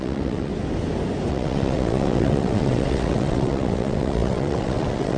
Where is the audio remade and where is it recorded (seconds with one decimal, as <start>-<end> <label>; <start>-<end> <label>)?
0.0-0.5 remade; 0.5-1.3 recorded; 1.3-5.2 remade